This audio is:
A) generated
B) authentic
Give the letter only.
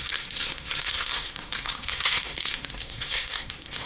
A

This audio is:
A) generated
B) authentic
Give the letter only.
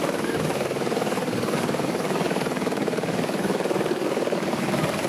A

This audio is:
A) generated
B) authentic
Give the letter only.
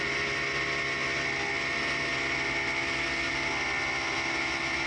B